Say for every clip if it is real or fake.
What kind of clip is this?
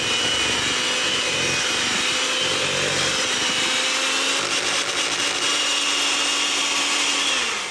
real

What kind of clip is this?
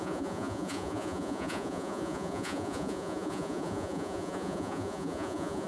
fake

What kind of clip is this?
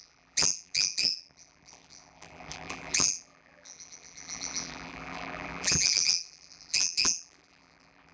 fake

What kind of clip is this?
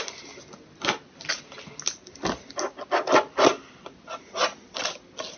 real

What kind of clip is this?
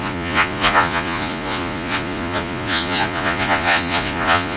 fake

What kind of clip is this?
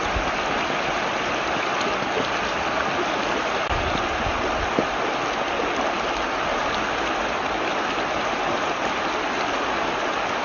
real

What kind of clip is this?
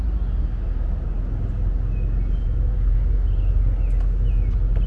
real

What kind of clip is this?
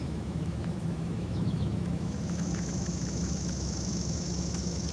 fake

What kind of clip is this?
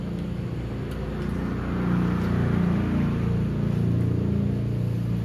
real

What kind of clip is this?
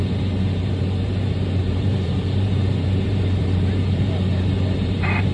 fake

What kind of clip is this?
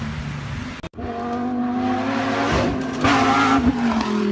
real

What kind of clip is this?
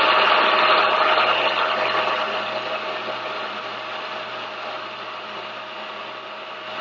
real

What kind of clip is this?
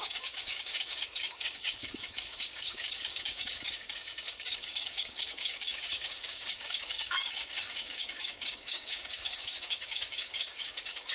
fake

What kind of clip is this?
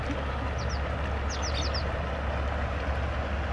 real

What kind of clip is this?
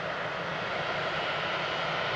real